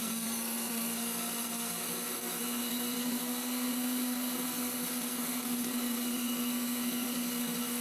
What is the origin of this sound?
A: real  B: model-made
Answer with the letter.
B